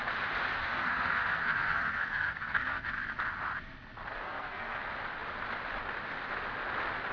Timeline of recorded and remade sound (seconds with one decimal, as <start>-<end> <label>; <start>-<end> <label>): 0.0-0.5 recorded; 0.5-2.9 remade; 2.9-4.1 recorded; 4.1-4.8 remade; 4.8-7.1 recorded